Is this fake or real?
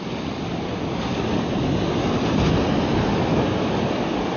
real